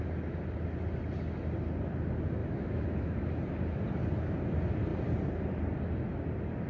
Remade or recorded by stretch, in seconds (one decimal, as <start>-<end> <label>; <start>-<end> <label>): 0.0-2.4 recorded; 2.4-3.3 remade; 3.3-6.7 recorded